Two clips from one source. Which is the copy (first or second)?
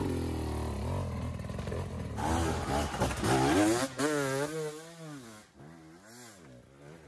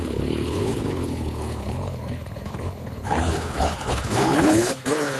second